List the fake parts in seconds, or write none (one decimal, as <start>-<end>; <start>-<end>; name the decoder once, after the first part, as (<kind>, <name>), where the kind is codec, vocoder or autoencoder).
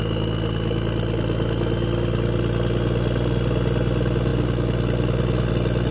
none